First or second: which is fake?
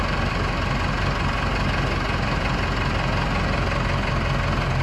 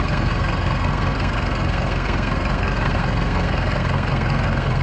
second